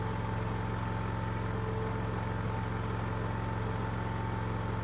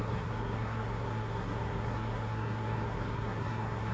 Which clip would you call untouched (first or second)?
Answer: first